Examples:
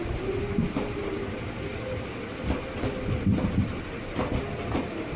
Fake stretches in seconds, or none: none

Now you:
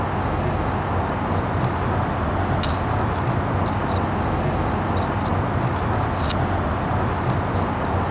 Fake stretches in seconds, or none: none

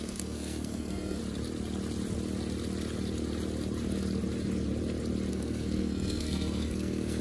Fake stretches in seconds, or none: 0.0-1.2 (codec, SNAC); 5.3-7.2

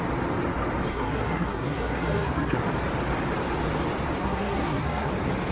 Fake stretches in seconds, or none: 0.9-2.6 (codec, SNAC); 4.2-5.1

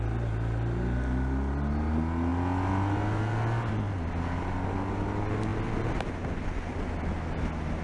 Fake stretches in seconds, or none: none